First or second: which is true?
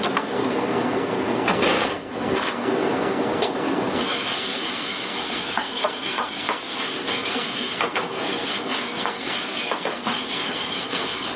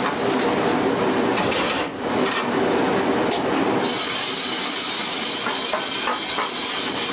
second